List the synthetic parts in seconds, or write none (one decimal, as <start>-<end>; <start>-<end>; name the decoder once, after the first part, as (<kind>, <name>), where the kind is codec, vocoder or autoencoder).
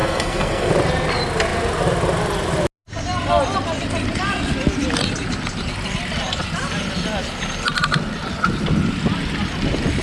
0.0-0.7 (codec, SNAC)